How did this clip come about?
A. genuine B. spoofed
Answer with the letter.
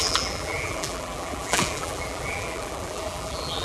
B